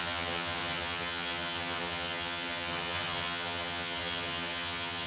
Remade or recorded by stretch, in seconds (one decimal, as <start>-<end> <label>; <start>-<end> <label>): 0.0-5.1 remade